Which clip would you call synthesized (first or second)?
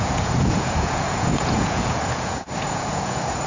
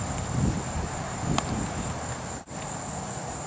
first